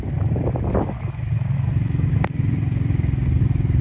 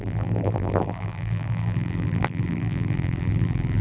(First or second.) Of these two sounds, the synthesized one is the second